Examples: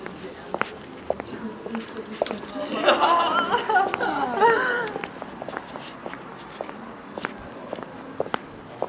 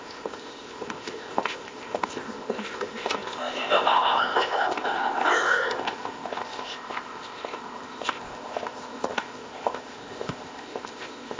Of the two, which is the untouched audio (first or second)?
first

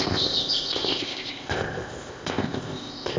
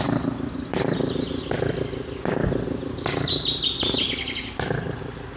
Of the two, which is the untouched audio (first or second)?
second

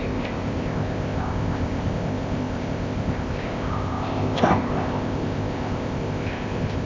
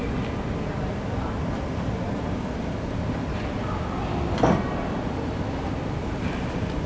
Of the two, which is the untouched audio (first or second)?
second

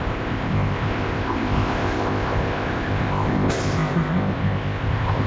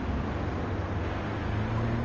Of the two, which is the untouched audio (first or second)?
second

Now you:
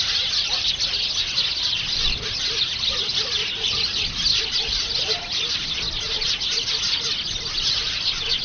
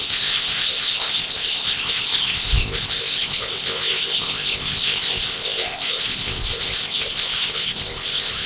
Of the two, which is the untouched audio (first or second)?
first